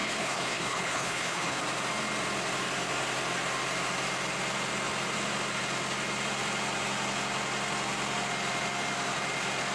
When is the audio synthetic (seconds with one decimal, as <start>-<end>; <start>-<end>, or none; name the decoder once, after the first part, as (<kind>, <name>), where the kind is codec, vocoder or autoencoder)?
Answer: 0.0-1.6 (codec, HILCodec)